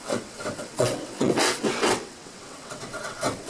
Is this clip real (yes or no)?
no